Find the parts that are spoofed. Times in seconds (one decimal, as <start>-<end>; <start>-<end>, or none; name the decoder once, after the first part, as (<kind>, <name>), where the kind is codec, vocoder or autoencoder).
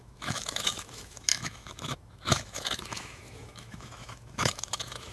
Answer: 0.0-5.1 (autoencoder, DAC-VAE)